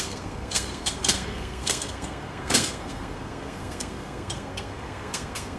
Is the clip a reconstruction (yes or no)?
yes